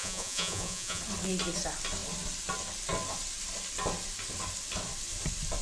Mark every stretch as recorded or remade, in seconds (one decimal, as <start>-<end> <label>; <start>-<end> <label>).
0.0-1.0 remade; 1.0-5.6 recorded